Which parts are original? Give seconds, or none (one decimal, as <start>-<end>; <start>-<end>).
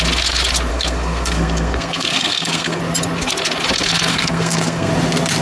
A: 0.0-0.7; 2.8-4.1; 4.9-5.4